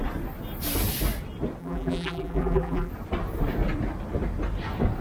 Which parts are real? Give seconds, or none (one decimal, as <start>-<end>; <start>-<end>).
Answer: 0.0-1.6; 2.9-5.0

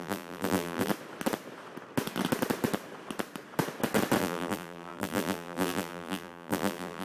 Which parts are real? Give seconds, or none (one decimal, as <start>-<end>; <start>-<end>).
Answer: 0.9-4.2

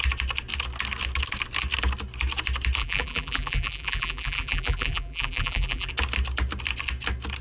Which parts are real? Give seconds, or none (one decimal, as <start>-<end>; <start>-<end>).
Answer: 0.0-2.8; 5.9-7.4

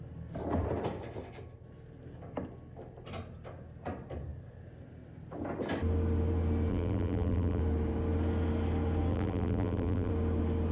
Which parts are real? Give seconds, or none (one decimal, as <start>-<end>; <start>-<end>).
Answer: 0.0-6.7; 7.6-9.1; 10.1-10.7

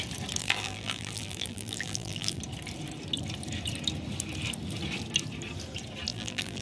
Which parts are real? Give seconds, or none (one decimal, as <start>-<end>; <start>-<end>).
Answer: 0.0-0.4; 2.4-6.1

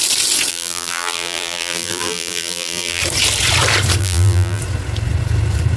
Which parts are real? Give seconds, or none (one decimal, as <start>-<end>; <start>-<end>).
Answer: 0.0-0.5; 3.0-4.0; 4.6-5.8

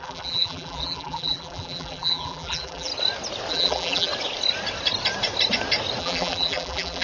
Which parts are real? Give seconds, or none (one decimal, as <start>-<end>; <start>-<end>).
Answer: 2.9-3.5; 4.1-6.0